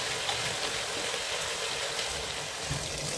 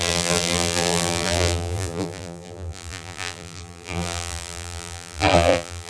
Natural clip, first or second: first